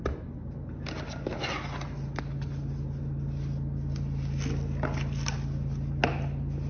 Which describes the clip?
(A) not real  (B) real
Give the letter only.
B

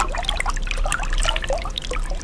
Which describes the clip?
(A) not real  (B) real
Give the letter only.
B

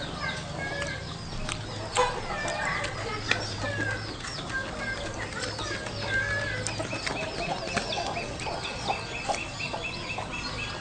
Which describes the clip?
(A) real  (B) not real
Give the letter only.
A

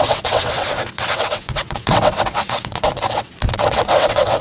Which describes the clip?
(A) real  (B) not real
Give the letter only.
B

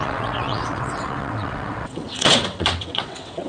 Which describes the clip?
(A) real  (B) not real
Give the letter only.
B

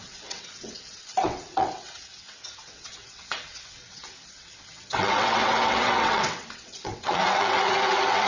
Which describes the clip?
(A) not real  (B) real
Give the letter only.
A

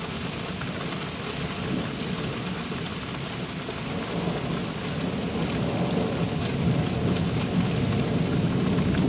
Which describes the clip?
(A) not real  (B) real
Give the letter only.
B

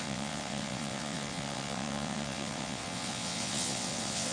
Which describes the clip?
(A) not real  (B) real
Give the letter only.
A